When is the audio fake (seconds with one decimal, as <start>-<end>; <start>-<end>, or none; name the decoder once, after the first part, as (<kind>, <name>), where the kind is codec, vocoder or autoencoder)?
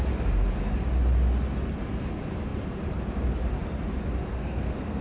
4.3-5.0 (codec, SNAC)